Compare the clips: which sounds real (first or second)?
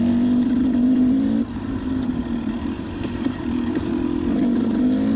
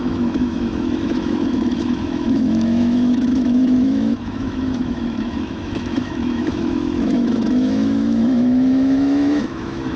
first